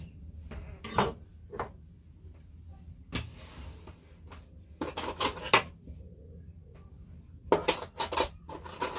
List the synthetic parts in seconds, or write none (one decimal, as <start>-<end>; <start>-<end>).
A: none